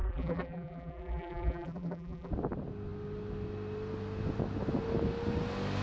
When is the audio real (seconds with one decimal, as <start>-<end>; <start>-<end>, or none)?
2.3-5.8